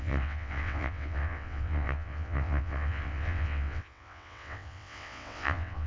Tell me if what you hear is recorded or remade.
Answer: remade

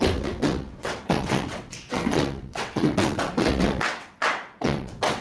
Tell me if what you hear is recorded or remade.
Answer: remade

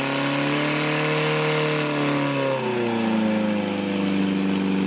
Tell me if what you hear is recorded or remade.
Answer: recorded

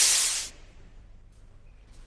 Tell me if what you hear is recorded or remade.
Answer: recorded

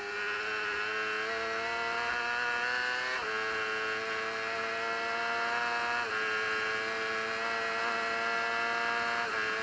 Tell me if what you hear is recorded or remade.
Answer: recorded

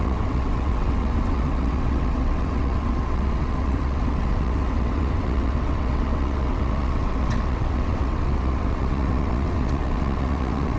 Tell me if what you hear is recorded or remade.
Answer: remade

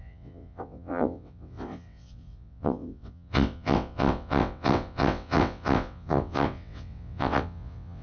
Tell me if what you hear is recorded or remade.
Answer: remade